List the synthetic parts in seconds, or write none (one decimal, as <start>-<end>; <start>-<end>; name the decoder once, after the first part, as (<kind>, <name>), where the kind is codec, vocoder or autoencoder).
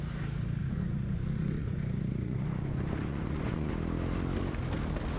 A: 0.6-3.7 (vocoder, Vocos)